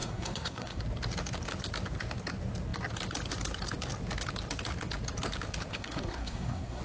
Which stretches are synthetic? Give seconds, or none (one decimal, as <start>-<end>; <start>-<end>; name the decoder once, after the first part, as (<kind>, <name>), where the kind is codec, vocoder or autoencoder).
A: 0.0-0.8 (codec, SNAC); 5.7-6.8